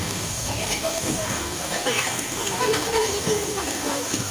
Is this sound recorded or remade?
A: remade